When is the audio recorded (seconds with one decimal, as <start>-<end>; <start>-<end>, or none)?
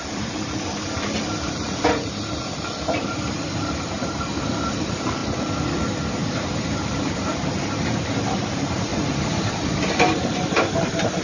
5.2-6.2; 8.9-9.9